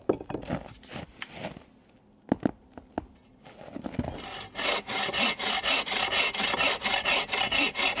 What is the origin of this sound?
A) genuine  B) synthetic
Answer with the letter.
A